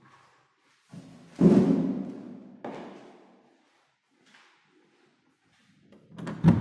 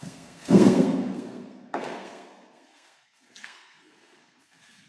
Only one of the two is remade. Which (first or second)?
second